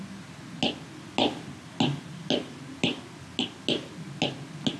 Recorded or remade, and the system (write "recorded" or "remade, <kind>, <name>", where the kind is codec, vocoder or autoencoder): recorded